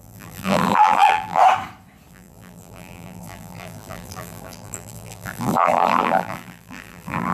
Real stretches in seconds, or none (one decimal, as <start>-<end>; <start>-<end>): 1.4-2.1